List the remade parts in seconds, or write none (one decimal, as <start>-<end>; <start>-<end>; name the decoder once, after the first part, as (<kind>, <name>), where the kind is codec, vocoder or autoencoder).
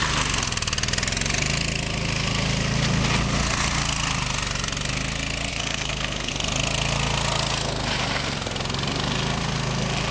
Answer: 5.5-6.3 (codec, SNAC)